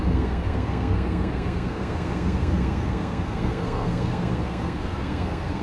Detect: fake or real fake